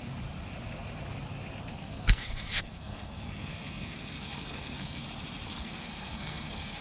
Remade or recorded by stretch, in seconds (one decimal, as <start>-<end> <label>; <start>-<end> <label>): 0.0-1.7 recorded; 1.7-5.0 remade; 5.0-5.5 recorded; 5.5-6.8 remade